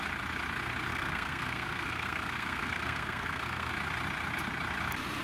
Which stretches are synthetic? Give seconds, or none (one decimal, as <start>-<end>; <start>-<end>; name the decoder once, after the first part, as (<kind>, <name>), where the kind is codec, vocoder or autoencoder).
0.9-3.7 (codec, SNAC)